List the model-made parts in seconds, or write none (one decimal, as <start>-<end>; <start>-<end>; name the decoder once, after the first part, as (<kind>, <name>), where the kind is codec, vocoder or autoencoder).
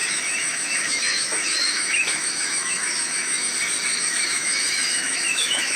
0.0-3.5 (autoencoder, DAC-VAE); 3.9-5.8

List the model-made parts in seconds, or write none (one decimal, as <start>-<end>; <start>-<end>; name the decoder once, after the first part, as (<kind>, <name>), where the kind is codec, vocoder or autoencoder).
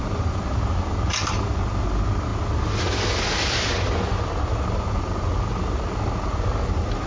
none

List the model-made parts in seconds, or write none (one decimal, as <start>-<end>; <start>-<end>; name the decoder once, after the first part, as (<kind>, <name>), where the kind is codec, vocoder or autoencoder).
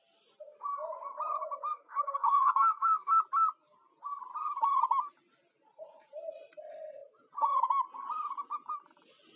1.7-3.2 (codec, SNAC)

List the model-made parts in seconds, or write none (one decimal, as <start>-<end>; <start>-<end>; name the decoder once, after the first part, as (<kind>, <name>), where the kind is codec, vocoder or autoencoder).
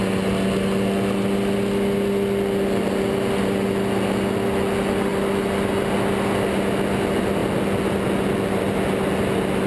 none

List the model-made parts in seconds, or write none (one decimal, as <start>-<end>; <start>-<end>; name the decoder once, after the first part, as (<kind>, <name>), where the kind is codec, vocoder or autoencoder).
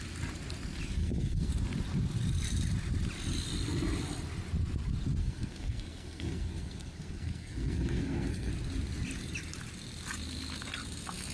1.0-1.5 (codec, SNAC); 5.2-8.5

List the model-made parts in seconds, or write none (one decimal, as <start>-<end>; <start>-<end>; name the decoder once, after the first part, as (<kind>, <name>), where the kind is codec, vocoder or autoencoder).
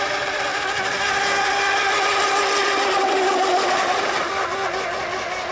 none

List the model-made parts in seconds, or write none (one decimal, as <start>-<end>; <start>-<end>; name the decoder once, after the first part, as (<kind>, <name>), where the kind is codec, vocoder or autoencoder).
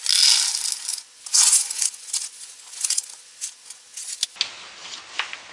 0.9-4.2 (vocoder, Vocos)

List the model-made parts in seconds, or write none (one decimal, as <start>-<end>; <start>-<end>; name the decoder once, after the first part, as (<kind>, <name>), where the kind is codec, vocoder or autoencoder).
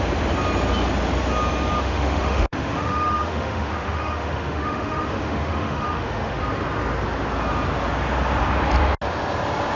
1.8-6.4 (autoencoder, DAC-VAE)